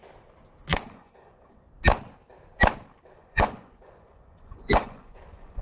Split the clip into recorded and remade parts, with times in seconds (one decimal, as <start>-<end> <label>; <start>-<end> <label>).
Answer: 0.0-0.7 recorded; 0.7-1.6 remade; 1.6-3.2 recorded; 3.2-5.6 remade

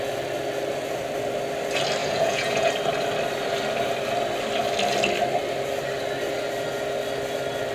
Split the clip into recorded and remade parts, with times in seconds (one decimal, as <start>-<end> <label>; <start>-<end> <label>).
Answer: 0.0-2.0 recorded; 2.0-2.7 remade; 2.7-7.7 recorded

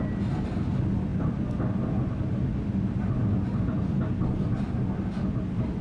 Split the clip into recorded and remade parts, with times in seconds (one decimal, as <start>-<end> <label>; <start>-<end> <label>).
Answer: 0.0-5.8 recorded

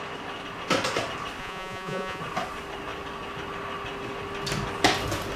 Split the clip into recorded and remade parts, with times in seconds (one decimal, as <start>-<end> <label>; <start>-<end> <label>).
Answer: 0.0-1.4 recorded; 1.4-2.2 remade; 2.2-5.4 recorded